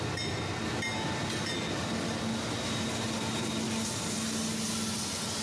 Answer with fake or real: real